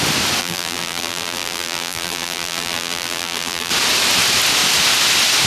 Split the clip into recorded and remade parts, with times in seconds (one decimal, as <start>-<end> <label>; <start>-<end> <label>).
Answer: 0.0-0.4 recorded; 0.4-3.7 remade; 3.7-5.5 recorded